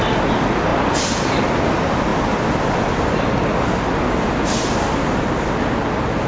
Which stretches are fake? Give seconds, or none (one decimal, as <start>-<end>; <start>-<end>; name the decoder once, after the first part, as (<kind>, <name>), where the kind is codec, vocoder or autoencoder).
none